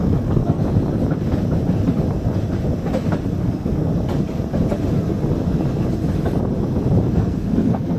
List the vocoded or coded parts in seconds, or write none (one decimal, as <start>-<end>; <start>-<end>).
0.0-0.6; 3.4-3.9; 7.1-8.0

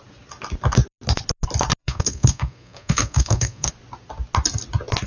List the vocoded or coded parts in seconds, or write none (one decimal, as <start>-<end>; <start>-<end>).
1.8-3.7

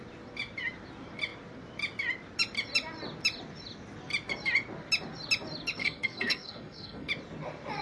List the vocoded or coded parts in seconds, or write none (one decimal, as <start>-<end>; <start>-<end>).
5.8-7.1

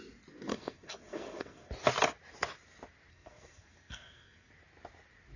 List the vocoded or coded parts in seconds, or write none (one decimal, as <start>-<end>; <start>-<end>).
0.5-1.7; 3.1-4.5

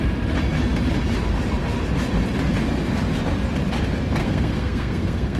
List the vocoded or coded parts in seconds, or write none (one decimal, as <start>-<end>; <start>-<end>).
4.2-5.4

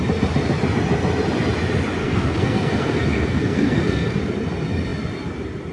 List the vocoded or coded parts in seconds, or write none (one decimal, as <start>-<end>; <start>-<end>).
2.0-4.2

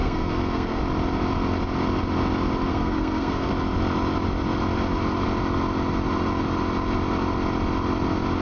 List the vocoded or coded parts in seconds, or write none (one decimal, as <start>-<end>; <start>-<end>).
0.0-0.8; 2.7-3.5

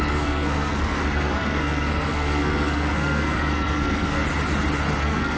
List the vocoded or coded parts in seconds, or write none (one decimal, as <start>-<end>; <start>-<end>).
0.0-4.2; 5.0-5.4